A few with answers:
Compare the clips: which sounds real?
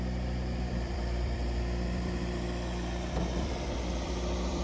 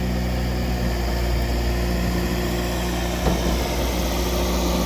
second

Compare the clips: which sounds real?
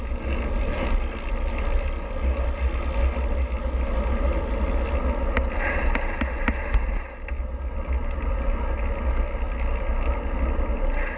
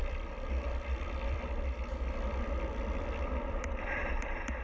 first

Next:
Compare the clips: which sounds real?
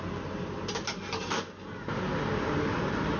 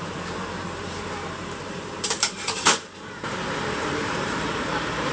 first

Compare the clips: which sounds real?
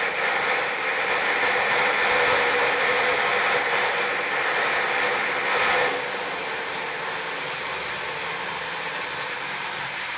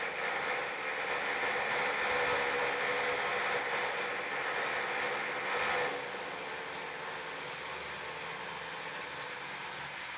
second